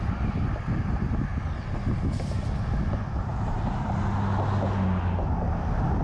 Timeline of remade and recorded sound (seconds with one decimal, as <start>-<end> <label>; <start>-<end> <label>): 0.0-3.3 recorded; 3.3-4.0 remade; 4.0-6.0 recorded

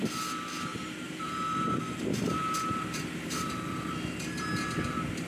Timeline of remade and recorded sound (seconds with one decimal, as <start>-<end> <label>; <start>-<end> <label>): 0.0-0.7 recorded; 0.7-3.9 remade; 3.9-5.3 recorded

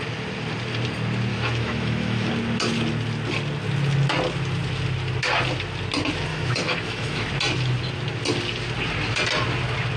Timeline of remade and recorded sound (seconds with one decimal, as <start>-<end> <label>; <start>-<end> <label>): 0.0-1.3 recorded; 1.3-2.3 remade; 2.3-6.3 recorded; 6.3-7.3 remade; 7.3-10.0 recorded

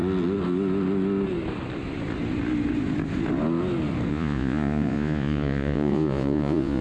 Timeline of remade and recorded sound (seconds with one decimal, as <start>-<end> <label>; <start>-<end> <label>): 0.0-4.1 recorded; 4.1-6.8 remade

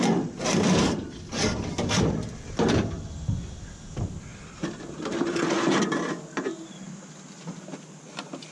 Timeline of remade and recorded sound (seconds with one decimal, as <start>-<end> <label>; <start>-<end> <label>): 0.0-8.5 recorded

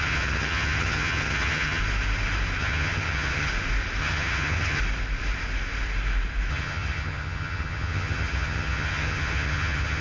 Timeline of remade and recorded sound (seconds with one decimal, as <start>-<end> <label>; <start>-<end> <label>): 0.0-1.8 remade; 1.8-2.6 recorded; 2.6-3.5 remade; 3.5-4.0 recorded; 4.0-4.8 remade; 4.8-6.5 recorded; 6.5-10.0 remade